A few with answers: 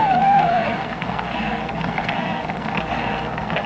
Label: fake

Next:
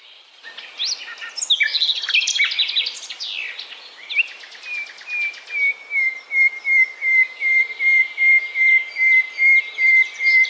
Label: real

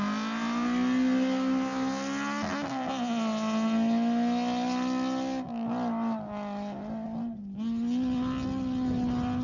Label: real